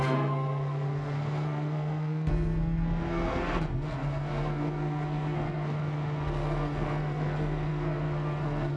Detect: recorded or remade remade